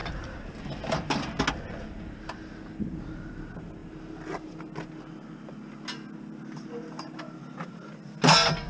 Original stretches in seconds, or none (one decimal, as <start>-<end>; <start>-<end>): 0.0-8.7